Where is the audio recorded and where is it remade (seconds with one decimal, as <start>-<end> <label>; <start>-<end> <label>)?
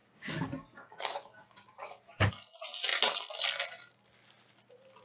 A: 0.0-2.3 remade; 2.3-5.0 recorded